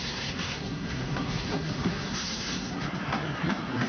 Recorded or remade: remade